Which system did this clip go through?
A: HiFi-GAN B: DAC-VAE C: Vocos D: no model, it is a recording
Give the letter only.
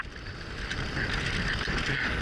D